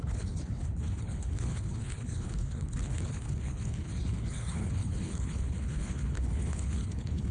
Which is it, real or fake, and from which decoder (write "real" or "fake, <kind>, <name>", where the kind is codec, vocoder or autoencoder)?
fake, codec, HILCodec